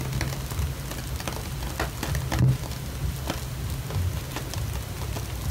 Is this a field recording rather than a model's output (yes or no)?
yes